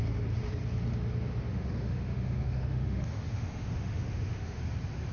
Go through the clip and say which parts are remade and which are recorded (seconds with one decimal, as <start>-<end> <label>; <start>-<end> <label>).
0.0-1.5 recorded; 1.5-4.6 remade; 4.6-5.1 recorded